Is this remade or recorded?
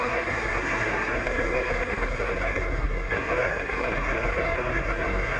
remade